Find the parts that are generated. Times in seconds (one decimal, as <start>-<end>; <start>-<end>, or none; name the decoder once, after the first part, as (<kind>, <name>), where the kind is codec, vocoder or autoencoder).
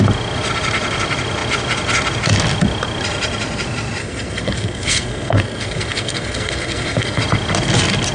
4.0-7.2 (codec, SNAC)